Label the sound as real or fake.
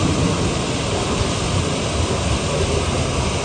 real